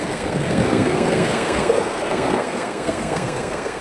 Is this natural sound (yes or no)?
no